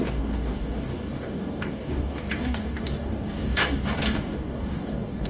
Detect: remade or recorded remade